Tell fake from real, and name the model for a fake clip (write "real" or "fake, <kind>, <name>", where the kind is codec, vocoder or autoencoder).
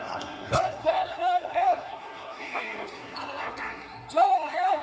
fake, codec, SNAC